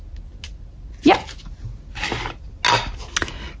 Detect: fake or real real